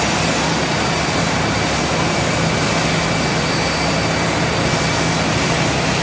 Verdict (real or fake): real